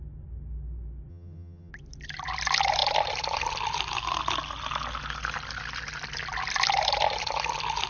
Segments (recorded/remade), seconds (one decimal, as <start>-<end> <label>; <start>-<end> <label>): 0.0-1.1 recorded; 1.1-1.7 remade; 1.7-7.9 recorded